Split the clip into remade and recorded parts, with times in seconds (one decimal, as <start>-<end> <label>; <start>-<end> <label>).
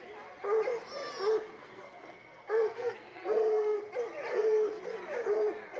0.0-1.6 recorded; 1.6-3.8 remade; 3.8-4.3 recorded; 4.3-4.8 remade; 4.8-5.8 recorded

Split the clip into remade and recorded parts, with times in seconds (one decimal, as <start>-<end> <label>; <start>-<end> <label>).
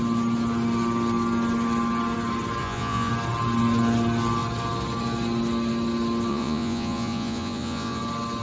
0.0-2.6 recorded; 2.6-3.1 remade; 3.1-6.3 recorded; 6.3-8.0 remade; 8.0-8.4 recorded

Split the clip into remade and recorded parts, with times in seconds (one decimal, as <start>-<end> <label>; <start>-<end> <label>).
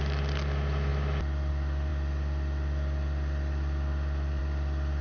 0.0-5.0 recorded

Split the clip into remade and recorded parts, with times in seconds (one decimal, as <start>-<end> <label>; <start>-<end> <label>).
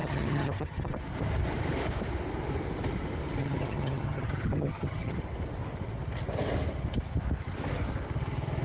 0.0-1.0 remade; 1.0-3.4 recorded; 3.4-5.2 remade; 5.2-8.6 recorded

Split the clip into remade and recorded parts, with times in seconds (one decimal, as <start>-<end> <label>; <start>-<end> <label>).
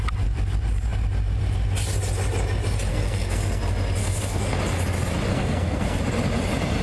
0.0-2.9 recorded; 2.9-3.6 remade; 3.6-4.0 recorded; 4.0-4.6 remade; 4.6-5.3 recorded; 5.3-6.0 remade; 6.0-6.8 recorded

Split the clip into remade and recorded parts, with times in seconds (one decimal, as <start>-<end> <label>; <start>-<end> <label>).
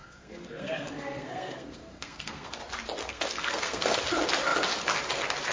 0.0-2.6 remade; 2.6-3.0 recorded; 3.0-4.0 remade; 4.0-5.5 recorded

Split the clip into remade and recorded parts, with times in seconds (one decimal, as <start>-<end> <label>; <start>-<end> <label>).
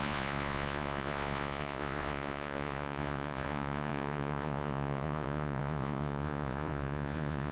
0.0-7.5 remade